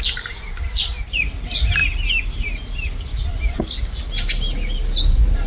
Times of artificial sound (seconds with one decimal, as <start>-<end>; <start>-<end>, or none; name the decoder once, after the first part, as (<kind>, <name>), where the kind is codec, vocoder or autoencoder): none